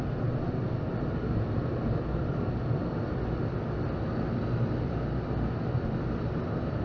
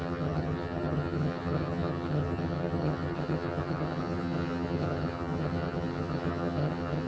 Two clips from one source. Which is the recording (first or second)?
first